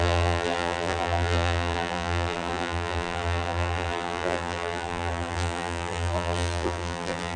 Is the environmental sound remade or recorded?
remade